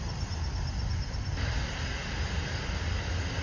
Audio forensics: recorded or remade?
recorded